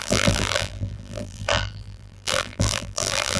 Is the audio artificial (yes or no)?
yes